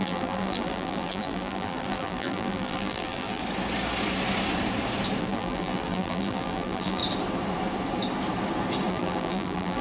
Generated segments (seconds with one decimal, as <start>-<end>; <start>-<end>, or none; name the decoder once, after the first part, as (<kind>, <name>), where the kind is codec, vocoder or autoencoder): 0.0-3.4 (vocoder, BigVGAN v2); 5.2-7.0; 8.9-9.8